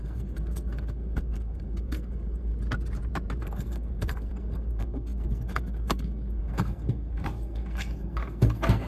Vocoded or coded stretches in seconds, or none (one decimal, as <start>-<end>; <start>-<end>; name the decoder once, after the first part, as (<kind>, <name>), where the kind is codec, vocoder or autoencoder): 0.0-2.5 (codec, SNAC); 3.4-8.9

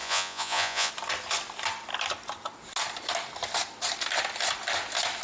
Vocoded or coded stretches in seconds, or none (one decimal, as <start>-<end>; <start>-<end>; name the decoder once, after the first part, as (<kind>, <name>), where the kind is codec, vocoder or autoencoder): 0.0-0.9 (vocoder, Vocos)

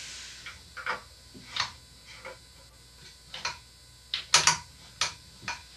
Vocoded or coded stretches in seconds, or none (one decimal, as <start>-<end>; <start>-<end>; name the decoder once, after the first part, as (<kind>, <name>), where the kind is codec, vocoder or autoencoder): none